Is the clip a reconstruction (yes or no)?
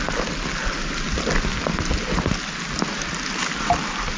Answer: no